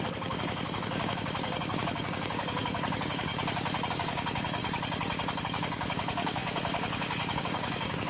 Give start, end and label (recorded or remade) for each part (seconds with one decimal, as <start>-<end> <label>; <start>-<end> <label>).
0.0-3.3 remade; 3.3-3.9 recorded; 3.9-4.6 remade; 4.6-5.4 recorded; 5.4-8.1 remade